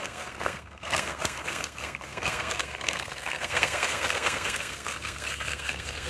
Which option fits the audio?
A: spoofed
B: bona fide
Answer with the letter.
A